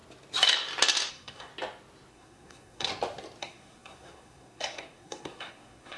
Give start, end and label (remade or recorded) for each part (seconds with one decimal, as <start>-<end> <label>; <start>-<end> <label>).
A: 0.0-1.1 recorded; 1.1-1.5 remade; 1.5-2.1 recorded; 2.1-2.9 remade; 2.9-3.4 recorded; 3.4-6.0 remade